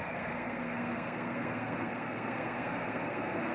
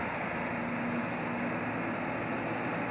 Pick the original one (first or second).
second